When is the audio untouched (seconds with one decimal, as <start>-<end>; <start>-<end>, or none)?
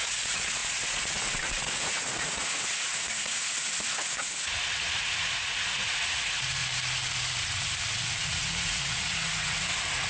6.6-8.3